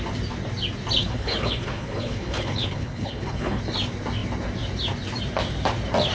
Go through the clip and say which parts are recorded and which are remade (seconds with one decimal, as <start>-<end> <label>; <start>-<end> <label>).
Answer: 0.0-1.0 recorded; 1.0-3.6 remade; 3.6-6.1 recorded